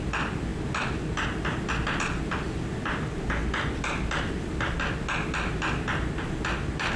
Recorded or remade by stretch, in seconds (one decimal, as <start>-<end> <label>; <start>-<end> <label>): 0.0-7.0 recorded